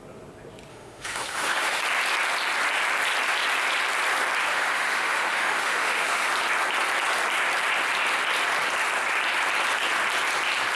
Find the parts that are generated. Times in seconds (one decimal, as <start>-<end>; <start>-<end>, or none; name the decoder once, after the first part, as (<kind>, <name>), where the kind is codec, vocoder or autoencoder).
0.7-1.8 (autoencoder, DAC-VAE); 4.5-6.3